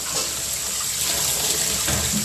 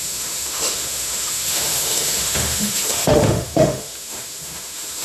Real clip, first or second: first